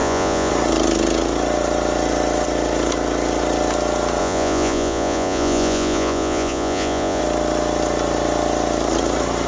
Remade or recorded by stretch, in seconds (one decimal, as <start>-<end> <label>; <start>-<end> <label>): 0.0-0.5 remade; 0.5-4.2 recorded; 4.2-7.2 remade; 7.2-9.5 recorded

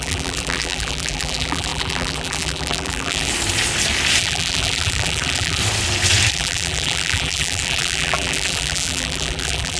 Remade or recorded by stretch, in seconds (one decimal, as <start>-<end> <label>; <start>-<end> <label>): 0.0-3.3 remade; 3.3-4.2 recorded; 4.2-5.6 remade; 5.6-6.3 recorded; 6.3-9.8 remade

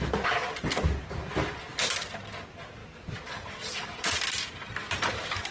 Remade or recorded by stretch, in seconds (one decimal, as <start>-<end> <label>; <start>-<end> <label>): 0.0-5.5 recorded

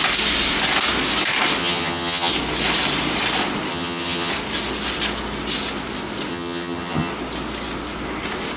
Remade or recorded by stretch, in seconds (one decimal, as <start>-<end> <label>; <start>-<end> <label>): 0.0-1.6 recorded; 1.6-2.3 remade; 2.3-3.7 recorded; 3.7-4.3 remade; 4.3-6.3 recorded; 6.3-7.1 remade; 7.1-8.6 recorded

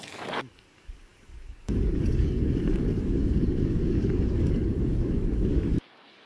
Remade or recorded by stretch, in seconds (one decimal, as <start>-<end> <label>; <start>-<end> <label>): 0.0-6.3 remade